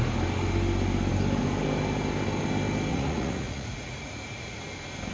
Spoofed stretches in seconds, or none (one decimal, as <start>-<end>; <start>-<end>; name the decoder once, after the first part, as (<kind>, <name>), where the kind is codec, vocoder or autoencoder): 2.9-4.6 (vocoder, Vocos)